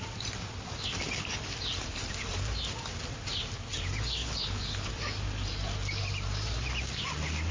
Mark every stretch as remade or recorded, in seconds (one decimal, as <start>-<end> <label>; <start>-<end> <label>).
0.0-4.2 recorded; 4.2-4.9 remade; 4.9-7.5 recorded